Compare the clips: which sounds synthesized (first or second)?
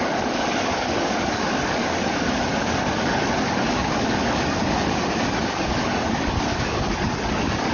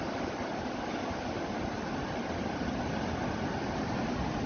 first